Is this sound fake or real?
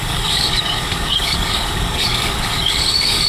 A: fake